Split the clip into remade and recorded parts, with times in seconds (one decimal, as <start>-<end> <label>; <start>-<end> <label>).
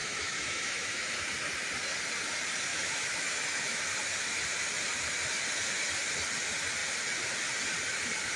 0.0-1.1 remade; 1.1-2.7 recorded; 2.7-3.8 remade; 3.8-8.4 recorded